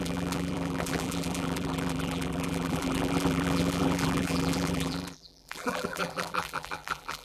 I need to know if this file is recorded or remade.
remade